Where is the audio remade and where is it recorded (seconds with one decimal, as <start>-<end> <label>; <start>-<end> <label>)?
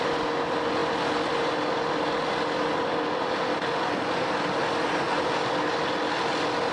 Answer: 0.0-6.7 recorded